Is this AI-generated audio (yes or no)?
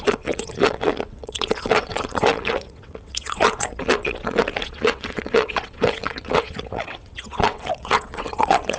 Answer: yes